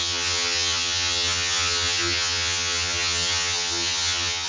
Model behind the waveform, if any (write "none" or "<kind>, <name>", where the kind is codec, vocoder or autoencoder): vocoder, HiFi-GAN